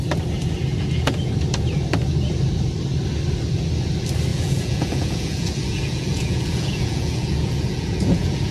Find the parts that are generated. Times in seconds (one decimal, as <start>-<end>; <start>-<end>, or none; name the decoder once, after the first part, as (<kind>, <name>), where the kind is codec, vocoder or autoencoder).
0.7-1.3 (vocoder, Vocos); 4.3-8.5